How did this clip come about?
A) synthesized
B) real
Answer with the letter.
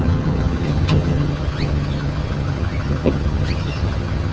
A